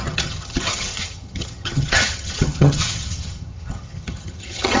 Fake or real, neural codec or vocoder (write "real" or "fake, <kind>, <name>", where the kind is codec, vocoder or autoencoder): fake, vocoder, HiFi-GAN